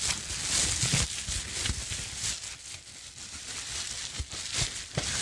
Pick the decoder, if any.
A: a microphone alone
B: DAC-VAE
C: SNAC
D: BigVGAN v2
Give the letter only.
A